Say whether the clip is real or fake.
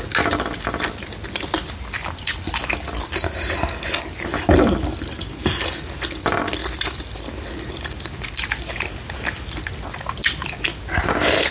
real